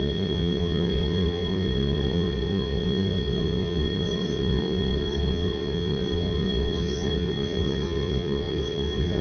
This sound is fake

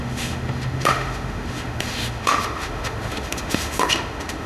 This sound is fake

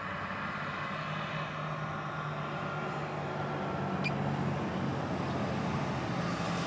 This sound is real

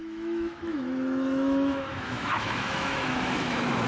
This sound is fake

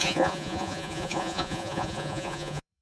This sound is fake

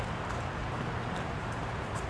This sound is fake